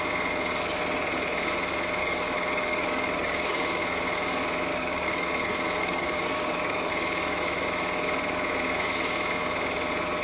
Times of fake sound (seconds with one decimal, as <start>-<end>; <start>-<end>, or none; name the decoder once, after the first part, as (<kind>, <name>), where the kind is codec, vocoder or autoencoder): 2.0-3.8 (codec, DAC); 4.7-5.3; 5.8-6.9